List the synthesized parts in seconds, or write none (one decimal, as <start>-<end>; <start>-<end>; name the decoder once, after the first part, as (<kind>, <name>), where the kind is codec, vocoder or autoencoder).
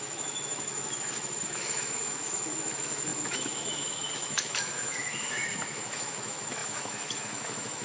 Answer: 0.0-7.8 (autoencoder, DAC-VAE)